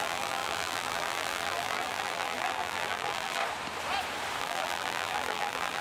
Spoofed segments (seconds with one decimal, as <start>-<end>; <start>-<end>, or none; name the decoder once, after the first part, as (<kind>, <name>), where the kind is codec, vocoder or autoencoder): 0.0-3.4 (vocoder, BigVGAN v2); 4.4-5.8